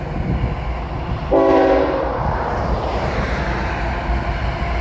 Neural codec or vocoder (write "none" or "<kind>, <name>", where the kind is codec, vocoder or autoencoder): none